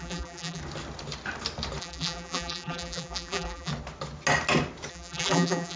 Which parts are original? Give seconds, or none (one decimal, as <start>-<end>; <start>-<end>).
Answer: 0.6-1.8; 3.7-4.9